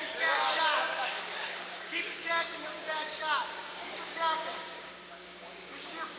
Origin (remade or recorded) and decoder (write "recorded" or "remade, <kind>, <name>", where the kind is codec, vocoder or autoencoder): remade, codec, DAC